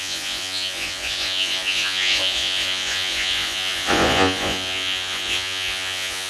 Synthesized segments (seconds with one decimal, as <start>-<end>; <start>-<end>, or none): 0.0-6.3